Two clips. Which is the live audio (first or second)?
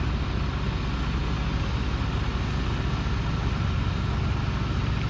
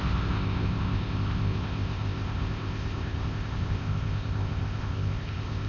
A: first